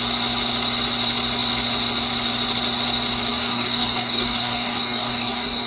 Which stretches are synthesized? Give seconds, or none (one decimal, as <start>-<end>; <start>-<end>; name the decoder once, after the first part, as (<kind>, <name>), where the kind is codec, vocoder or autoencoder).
3.3-5.7 (codec, DAC)